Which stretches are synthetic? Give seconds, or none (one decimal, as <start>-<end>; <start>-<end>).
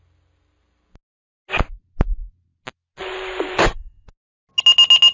3.0-4.1